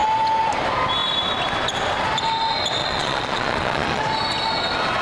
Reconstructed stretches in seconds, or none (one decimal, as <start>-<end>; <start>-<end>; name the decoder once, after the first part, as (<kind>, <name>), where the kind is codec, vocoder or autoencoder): 2.8-4.0 (vocoder, Vocos)